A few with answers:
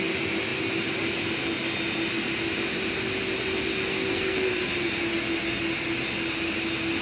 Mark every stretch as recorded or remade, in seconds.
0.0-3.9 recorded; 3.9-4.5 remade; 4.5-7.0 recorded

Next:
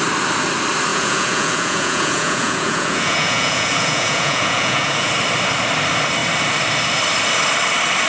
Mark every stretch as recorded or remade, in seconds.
0.0-0.9 recorded; 0.9-5.1 remade; 5.1-8.1 recorded

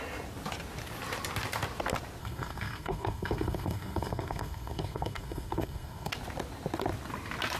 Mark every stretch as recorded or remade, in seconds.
0.0-2.2 recorded; 2.2-6.1 remade; 6.1-7.6 recorded

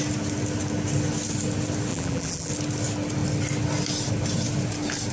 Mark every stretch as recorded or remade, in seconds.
0.0-1.9 recorded; 1.9-2.5 remade; 2.5-5.1 recorded

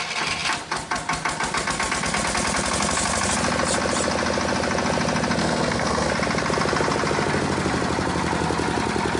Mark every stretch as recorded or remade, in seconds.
0.0-5.4 recorded; 5.4-6.1 remade; 6.1-9.2 recorded

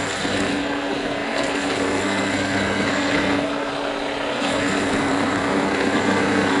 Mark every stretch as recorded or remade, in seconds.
0.0-3.7 remade; 3.7-4.3 recorded; 4.3-6.6 remade

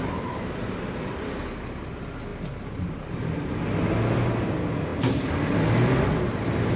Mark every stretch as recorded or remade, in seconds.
0.0-6.8 recorded

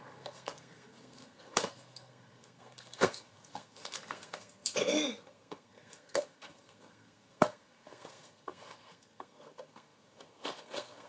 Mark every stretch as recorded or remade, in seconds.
0.0-11.1 remade